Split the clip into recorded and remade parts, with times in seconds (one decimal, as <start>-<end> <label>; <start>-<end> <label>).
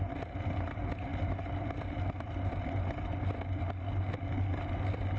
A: 0.0-5.2 recorded